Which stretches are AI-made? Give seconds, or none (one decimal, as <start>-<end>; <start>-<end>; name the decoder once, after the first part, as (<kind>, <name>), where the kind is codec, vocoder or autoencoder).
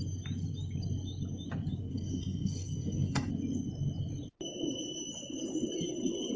1.9-3.3 (codec, SNAC)